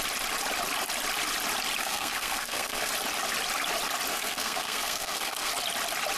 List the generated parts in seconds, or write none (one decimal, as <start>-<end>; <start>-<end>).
1.8-2.9; 4.1-5.5